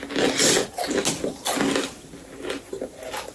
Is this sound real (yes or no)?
yes